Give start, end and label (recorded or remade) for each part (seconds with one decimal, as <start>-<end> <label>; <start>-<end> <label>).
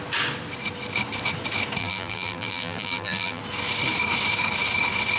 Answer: 0.0-1.8 recorded; 1.8-3.4 remade; 3.4-5.2 recorded